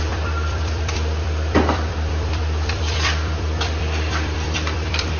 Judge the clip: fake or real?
fake